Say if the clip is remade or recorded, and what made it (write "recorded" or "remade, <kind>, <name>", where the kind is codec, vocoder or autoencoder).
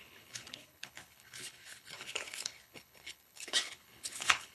remade, codec, HILCodec